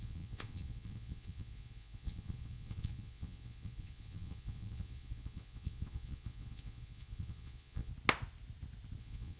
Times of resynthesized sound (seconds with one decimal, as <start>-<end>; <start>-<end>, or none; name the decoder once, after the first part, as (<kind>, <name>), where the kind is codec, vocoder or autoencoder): 0.0-7.9 (vocoder, Vocos); 9.0-9.4